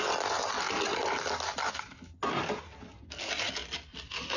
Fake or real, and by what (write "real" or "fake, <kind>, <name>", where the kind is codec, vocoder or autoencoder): real